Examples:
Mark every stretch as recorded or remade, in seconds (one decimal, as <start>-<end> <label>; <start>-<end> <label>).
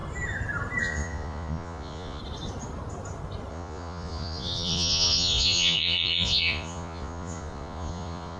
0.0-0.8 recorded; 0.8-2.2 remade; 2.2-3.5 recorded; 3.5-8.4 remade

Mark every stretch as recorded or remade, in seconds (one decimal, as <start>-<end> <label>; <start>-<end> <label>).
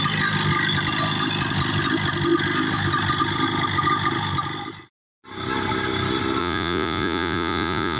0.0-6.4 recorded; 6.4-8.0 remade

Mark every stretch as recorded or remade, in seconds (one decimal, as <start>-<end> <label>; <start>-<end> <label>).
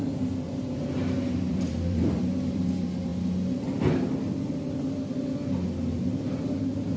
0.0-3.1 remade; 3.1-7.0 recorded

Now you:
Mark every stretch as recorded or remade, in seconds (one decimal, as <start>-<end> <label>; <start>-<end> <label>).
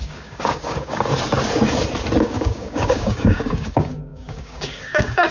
0.0-1.1 remade; 1.1-2.2 recorded; 2.2-5.3 remade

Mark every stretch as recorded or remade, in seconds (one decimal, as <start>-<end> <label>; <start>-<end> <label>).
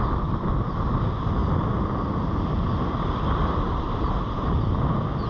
0.0-5.3 recorded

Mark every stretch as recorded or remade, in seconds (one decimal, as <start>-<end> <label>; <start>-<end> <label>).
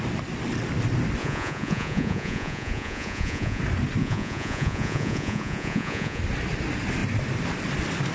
0.0-1.2 recorded; 1.2-3.6 remade; 3.6-4.0 recorded; 4.0-6.2 remade; 6.2-8.1 recorded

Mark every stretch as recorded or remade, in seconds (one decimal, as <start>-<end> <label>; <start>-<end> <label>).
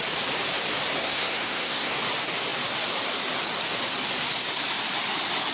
0.0-1.0 recorded; 1.0-1.9 remade; 1.9-5.5 recorded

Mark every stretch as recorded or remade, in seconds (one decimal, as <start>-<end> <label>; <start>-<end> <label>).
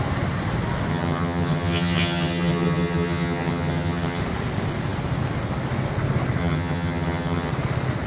0.0-0.9 recorded; 0.9-4.2 remade; 4.2-6.4 recorded; 6.4-7.5 remade; 7.5-8.1 recorded